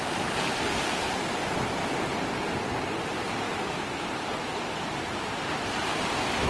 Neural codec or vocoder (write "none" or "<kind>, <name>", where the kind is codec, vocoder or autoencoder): none